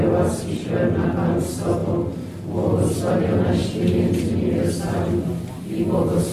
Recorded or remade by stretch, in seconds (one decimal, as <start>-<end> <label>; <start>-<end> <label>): 0.0-6.3 recorded